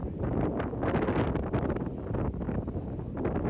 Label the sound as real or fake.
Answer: real